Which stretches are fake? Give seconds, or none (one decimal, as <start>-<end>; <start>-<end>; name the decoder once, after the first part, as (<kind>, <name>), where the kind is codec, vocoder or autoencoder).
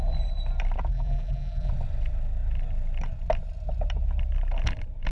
0.9-1.7 (vocoder, BigVGAN v2)